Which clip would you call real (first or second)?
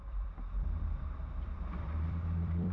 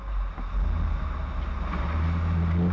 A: second